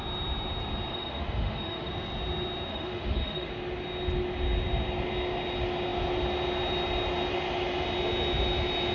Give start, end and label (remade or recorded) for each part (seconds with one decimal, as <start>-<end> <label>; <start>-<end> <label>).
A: 0.0-0.9 recorded; 0.9-1.9 remade; 1.9-2.7 recorded; 2.7-3.5 remade; 3.5-8.9 recorded

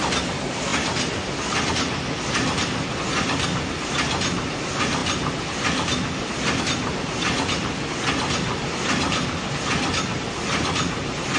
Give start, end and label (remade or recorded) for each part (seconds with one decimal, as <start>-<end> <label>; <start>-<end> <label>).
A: 0.0-11.4 recorded

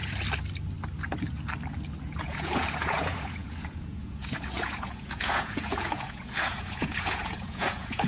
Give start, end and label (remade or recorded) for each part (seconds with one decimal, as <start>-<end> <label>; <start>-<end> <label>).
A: 0.0-2.0 recorded; 2.0-8.1 remade

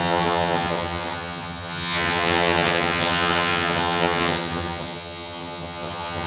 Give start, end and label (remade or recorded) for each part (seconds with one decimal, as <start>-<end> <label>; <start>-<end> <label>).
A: 0.0-6.3 remade

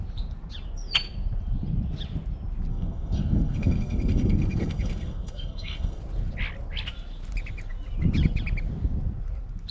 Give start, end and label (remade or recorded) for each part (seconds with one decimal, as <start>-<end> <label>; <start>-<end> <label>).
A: 0.0-2.7 recorded; 2.7-6.0 remade; 6.0-9.7 recorded

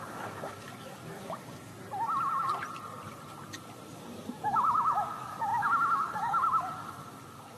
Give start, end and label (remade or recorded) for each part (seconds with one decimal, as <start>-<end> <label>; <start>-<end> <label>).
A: 0.0-1.7 remade; 1.7-3.9 recorded; 3.9-7.6 remade